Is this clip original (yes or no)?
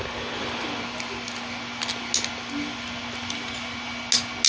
yes